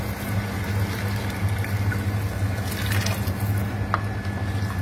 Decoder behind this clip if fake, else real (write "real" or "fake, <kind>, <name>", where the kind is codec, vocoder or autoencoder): real